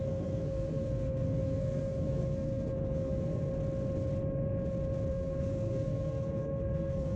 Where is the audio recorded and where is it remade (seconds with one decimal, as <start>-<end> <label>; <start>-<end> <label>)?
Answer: 0.0-3.5 remade; 3.5-5.1 recorded; 5.1-7.2 remade

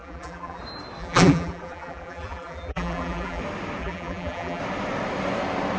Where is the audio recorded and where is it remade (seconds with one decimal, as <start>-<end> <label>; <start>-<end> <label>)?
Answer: 0.0-0.6 remade; 0.6-1.0 recorded; 1.0-3.4 remade; 3.4-3.8 recorded; 3.8-4.6 remade; 4.6-5.8 recorded

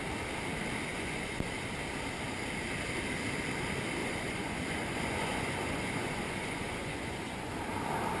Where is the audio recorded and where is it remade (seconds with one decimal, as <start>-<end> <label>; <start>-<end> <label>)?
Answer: 0.0-0.9 recorded; 0.9-1.5 remade; 1.5-4.0 recorded; 4.0-7.5 remade; 7.5-8.2 recorded

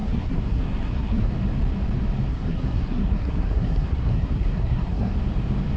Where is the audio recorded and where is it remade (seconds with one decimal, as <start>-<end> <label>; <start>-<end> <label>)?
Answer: 0.0-1.3 remade; 1.3-2.3 recorded; 2.3-5.1 remade; 5.1-5.8 recorded

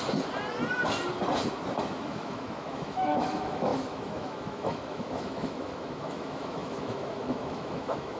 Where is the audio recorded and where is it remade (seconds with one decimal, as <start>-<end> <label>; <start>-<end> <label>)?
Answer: 0.0-1.8 recorded; 1.8-8.2 remade